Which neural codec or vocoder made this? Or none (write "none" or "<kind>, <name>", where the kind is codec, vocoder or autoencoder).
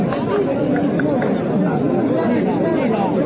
none